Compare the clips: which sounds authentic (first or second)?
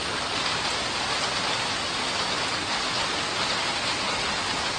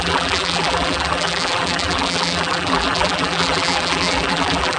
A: first